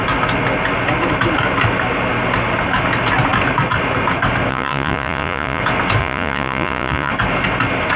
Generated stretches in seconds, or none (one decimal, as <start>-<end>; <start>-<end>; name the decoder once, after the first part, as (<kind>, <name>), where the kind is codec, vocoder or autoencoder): 4.5-5.6 (vocoder, Vocos); 6.0-7.1